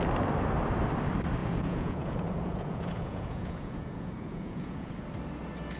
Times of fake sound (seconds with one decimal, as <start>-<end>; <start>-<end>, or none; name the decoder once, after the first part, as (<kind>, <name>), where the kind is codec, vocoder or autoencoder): 1.4-4.9 (vocoder, Vocos)